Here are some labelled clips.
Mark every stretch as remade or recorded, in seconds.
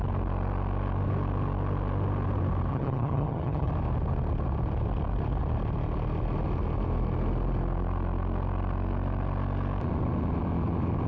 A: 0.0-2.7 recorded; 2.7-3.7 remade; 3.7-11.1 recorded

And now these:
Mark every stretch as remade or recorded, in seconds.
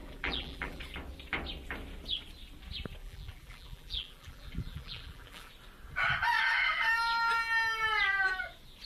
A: 0.0-0.8 remade; 0.8-3.0 recorded; 3.0-5.5 remade; 5.5-8.9 recorded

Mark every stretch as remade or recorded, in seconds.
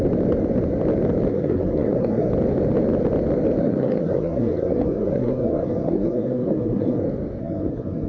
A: 0.0-1.3 recorded; 1.3-2.3 remade; 2.3-3.6 recorded; 3.6-7.0 remade; 7.0-7.4 recorded; 7.4-8.1 remade